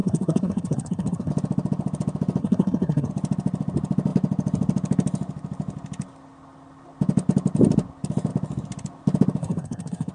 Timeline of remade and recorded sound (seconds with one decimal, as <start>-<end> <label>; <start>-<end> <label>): 0.0-1.3 remade; 1.3-2.4 recorded; 2.4-3.1 remade; 3.1-9.4 recorded; 9.4-10.1 remade